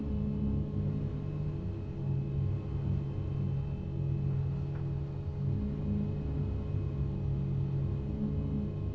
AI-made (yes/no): no